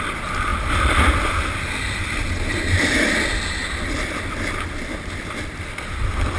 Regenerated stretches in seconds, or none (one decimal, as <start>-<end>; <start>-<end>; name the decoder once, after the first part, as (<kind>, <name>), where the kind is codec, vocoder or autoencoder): none